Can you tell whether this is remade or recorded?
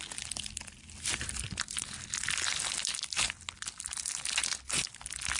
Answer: recorded